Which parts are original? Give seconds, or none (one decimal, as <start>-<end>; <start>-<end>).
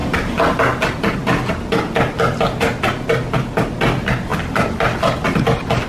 0.0-5.9